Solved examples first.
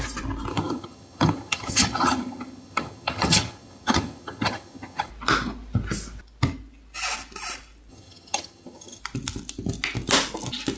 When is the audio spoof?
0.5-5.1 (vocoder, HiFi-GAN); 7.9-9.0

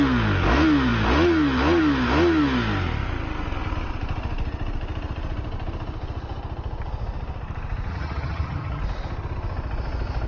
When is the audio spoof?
7.9-8.8 (vocoder, HiFi-GAN)

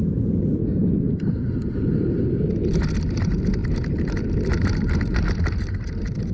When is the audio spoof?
none

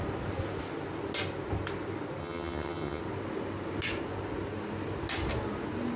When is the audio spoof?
2.2-3.0 (vocoder, HiFi-GAN)